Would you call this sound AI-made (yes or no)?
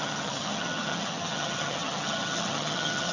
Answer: yes